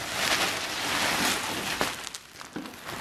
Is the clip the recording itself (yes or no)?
yes